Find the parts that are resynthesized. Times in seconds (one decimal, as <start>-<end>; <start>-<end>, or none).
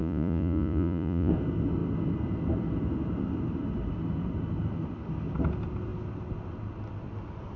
0.0-1.3